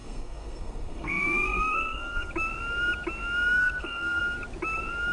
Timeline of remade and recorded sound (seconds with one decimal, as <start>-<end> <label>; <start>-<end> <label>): 0.0-2.3 remade; 2.3-3.6 recorded; 3.6-4.2 remade; 4.2-5.1 recorded